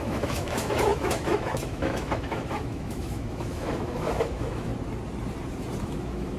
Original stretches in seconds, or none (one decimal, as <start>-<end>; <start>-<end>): 4.7-5.8